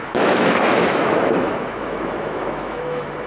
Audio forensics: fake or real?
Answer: fake